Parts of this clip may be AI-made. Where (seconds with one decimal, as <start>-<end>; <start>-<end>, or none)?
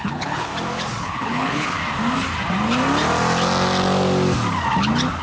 0.0-0.5; 1.0-1.8